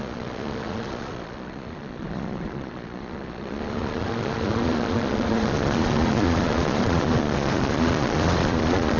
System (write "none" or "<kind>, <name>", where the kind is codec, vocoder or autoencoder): vocoder, Vocos